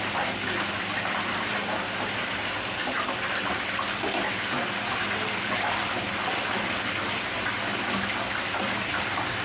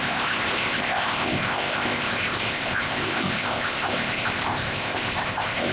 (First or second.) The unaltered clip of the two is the first